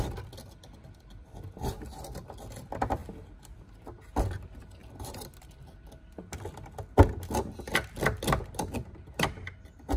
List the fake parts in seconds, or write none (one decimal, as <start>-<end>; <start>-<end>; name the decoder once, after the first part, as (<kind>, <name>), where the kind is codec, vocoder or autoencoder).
4.8-6.1 (vocoder, BigVGAN v2)